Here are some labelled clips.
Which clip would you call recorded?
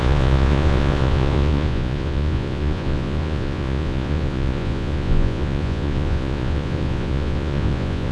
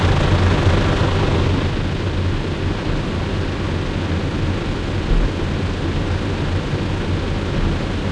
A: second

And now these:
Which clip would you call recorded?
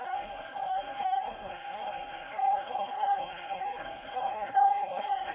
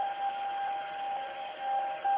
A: second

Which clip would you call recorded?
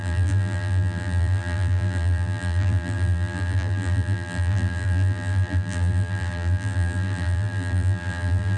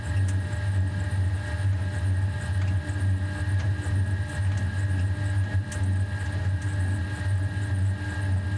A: second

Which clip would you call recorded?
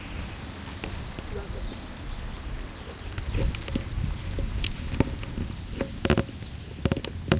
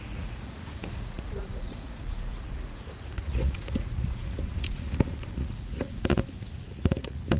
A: first